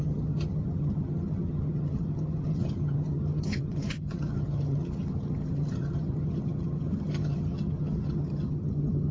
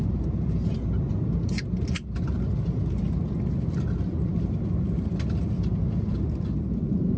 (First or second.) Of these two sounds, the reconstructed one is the first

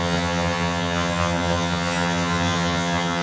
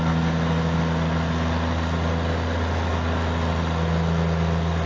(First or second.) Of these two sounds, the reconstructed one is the first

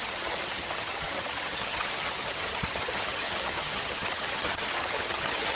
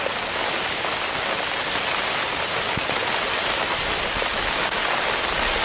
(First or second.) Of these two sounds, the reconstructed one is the first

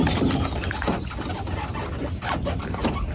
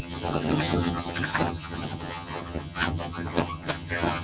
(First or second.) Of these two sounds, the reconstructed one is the second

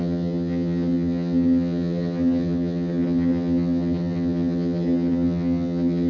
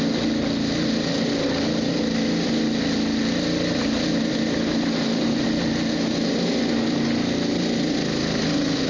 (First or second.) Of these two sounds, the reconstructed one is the first